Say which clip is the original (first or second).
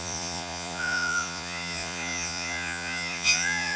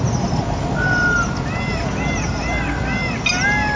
second